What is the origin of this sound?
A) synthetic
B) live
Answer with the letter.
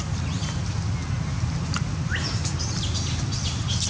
B